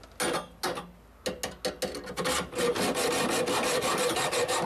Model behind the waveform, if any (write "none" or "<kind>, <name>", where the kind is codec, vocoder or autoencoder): none